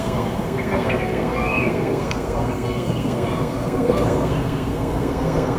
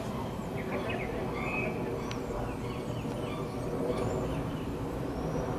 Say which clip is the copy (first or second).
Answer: first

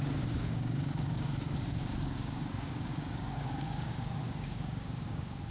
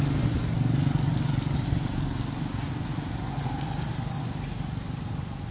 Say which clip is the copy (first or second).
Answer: first